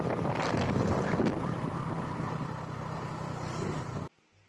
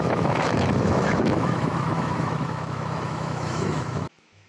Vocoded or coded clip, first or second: second